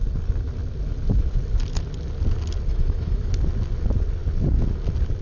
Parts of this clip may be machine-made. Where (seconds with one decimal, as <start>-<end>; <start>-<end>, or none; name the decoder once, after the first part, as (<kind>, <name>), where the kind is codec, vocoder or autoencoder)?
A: 2.7-3.3 (autoencoder, DAC-VAE)